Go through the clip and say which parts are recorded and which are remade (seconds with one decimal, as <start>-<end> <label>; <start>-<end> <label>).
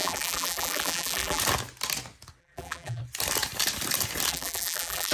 0.0-1.4 remade; 1.4-2.4 recorded; 2.4-3.0 remade; 3.0-4.3 recorded; 4.3-5.1 remade